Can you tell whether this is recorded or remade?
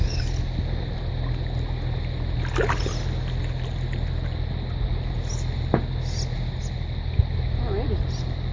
recorded